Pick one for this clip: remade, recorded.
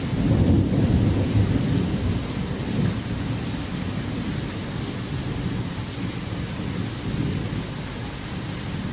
recorded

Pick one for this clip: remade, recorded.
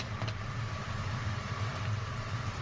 remade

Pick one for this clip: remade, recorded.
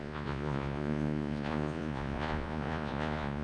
remade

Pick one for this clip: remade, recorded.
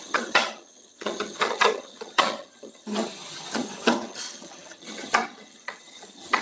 remade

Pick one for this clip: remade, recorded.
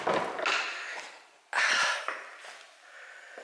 recorded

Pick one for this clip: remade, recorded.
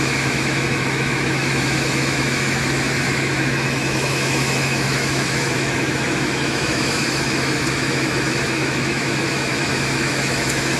remade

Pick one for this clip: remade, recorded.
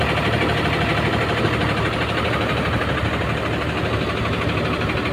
recorded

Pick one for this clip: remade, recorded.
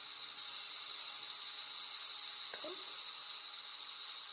recorded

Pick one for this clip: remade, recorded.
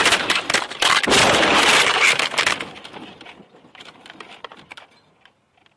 recorded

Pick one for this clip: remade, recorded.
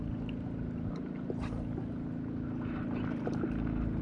recorded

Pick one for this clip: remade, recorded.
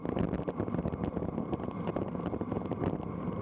recorded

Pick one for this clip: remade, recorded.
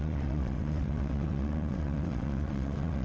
remade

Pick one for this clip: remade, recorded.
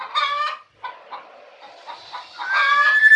recorded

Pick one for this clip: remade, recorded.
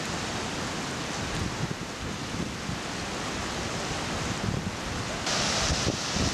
recorded